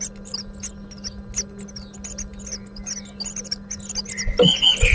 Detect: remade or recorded recorded